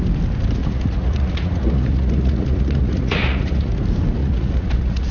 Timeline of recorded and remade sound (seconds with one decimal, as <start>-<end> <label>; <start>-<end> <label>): 0.0-0.6 recorded; 0.6-3.7 remade; 3.7-4.2 recorded; 4.2-5.1 remade